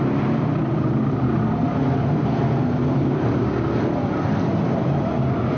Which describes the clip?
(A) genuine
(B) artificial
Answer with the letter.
B